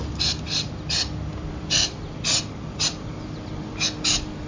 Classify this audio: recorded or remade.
recorded